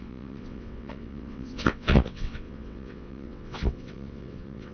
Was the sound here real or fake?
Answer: fake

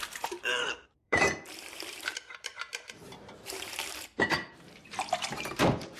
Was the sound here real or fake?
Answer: fake